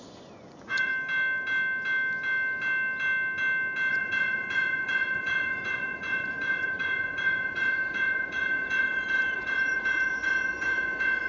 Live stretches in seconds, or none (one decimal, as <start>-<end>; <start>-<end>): 0.9-3.9